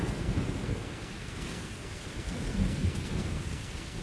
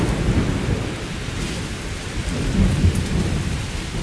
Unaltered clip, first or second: second